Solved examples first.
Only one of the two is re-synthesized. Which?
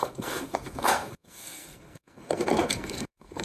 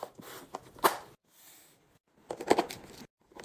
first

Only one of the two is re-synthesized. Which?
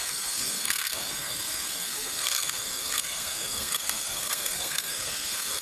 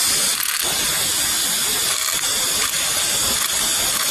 first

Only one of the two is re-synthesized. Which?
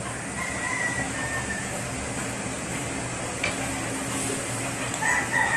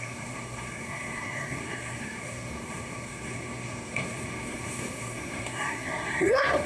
second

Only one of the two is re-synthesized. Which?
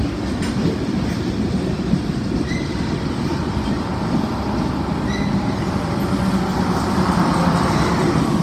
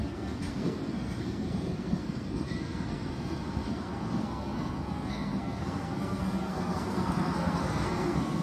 second